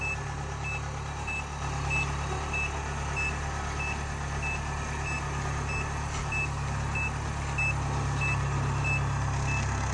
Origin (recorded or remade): recorded